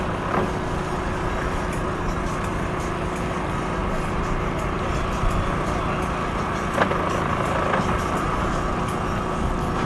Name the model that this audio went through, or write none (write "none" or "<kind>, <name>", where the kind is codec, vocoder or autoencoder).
none